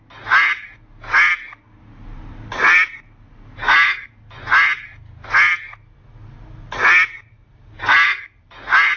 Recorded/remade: recorded